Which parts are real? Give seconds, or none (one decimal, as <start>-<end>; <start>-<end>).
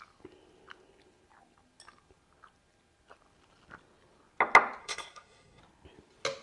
0.0-4.8; 5.6-6.4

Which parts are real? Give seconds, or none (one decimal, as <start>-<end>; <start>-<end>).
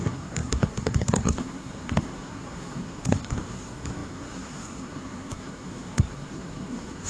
none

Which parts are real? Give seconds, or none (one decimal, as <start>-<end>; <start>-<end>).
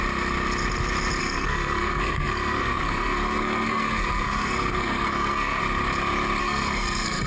0.0-1.2; 5.6-6.4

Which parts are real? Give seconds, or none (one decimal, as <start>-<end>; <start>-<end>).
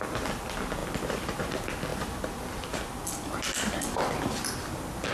0.0-5.1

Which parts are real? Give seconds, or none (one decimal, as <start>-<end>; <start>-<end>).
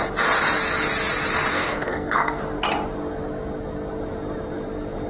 0.0-1.5; 2.4-5.1